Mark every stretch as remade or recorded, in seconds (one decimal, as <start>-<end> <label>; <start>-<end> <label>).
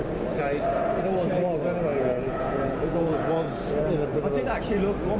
0.0-1.9 recorded; 1.9-3.5 remade; 3.5-5.2 recorded